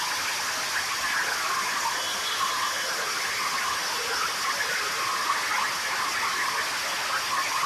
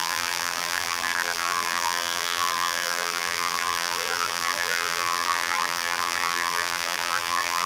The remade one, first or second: second